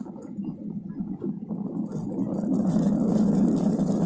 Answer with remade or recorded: recorded